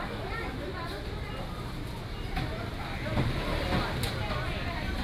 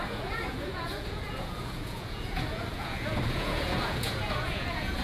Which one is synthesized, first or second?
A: second